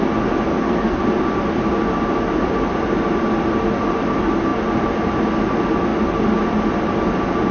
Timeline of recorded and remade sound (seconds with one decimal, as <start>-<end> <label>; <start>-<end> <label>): 0.0-0.5 recorded; 0.5-1.0 remade; 1.0-7.5 recorded